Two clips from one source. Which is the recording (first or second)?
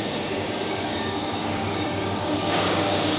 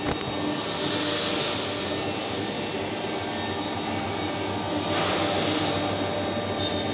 second